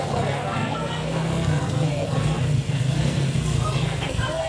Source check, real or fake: fake